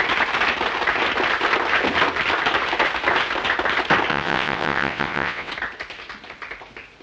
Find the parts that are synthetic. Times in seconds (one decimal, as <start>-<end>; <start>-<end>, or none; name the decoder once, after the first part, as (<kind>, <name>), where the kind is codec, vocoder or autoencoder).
4.1-5.5 (vocoder, WaveNeXt)